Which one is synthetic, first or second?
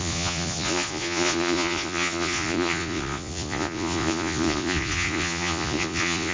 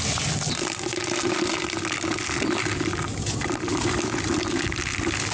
first